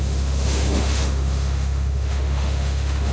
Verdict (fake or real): fake